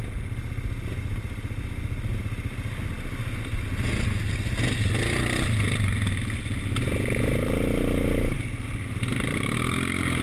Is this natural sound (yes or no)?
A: yes